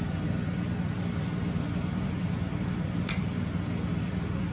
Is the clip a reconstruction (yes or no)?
no